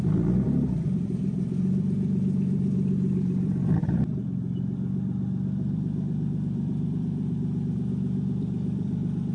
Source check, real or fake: fake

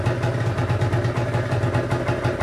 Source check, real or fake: real